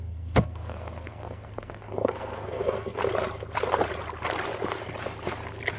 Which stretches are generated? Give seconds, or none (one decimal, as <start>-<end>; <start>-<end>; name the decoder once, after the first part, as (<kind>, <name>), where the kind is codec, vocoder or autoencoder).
0.0-3.0 (codec, SNAC)